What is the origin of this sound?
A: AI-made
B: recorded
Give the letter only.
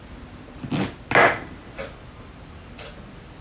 B